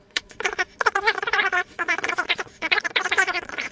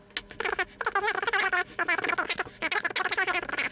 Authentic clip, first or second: second